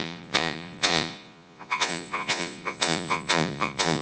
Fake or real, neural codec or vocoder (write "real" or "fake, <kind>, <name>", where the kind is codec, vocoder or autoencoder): fake, vocoder, Vocos